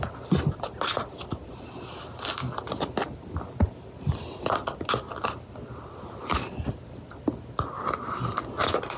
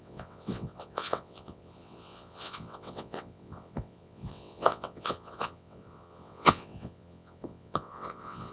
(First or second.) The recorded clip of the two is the first